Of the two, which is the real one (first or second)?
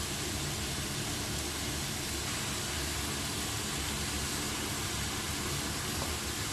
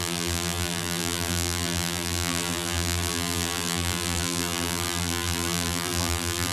first